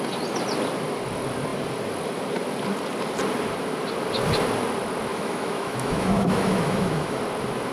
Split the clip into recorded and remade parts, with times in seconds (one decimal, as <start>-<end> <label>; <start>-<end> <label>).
0.0-5.1 recorded; 5.1-7.2 remade; 7.2-7.7 recorded